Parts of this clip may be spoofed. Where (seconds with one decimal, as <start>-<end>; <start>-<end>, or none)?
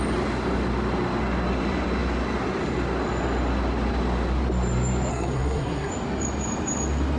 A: 5.1-5.9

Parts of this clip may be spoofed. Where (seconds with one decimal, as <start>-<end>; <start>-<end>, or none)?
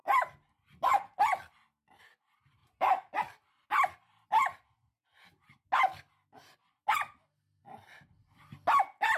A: 2.6-5.4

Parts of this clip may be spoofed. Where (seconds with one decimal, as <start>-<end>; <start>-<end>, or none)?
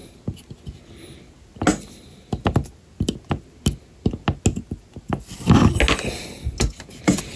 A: none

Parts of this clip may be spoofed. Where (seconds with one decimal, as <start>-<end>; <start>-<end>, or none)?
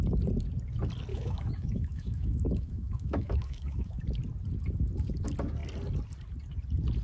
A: 1.1-4.0